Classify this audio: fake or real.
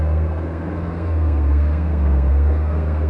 fake